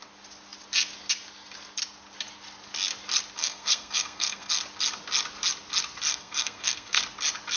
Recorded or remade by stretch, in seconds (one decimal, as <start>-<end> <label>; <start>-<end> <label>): 0.0-3.4 recorded; 3.4-4.5 remade; 4.5-6.1 recorded; 6.1-7.0 remade; 7.0-7.6 recorded